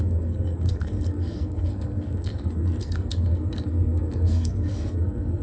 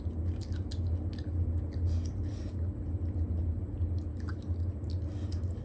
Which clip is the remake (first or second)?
first